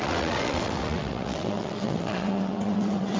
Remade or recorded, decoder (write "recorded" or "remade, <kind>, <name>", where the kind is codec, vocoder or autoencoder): remade, vocoder, WaveNeXt